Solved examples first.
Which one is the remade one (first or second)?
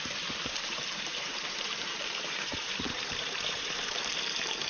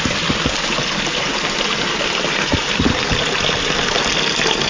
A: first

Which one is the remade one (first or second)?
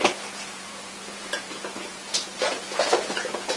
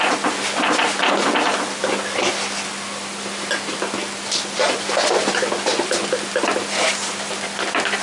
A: first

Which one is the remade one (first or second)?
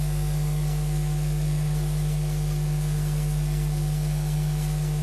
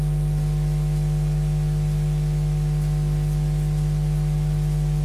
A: first